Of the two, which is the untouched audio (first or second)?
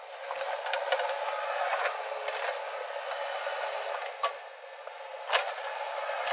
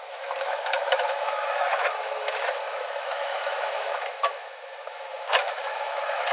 first